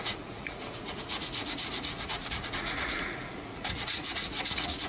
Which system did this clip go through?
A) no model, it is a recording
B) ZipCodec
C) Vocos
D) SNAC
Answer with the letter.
C